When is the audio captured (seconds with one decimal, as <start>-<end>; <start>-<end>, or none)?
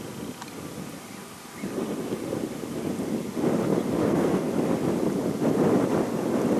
0.0-4.0; 4.5-6.6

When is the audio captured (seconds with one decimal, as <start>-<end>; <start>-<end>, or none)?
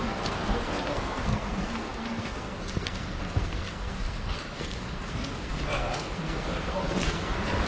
none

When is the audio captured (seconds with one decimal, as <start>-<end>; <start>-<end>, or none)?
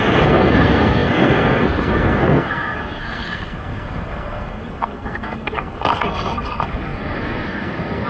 none